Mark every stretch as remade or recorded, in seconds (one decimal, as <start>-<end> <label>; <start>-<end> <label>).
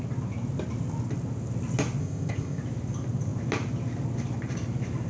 0.0-2.0 recorded; 2.0-2.6 remade; 2.6-5.1 recorded